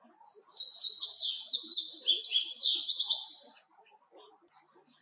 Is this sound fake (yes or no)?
no